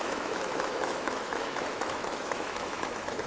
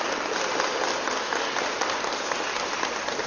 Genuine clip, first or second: second